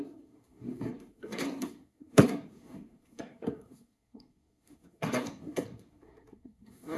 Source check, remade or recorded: remade